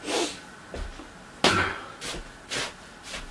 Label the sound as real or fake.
real